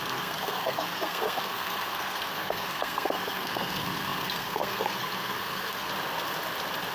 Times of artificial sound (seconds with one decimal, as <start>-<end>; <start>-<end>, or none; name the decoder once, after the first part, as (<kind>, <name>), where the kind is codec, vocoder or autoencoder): 0.0-5.9 (codec, SNAC)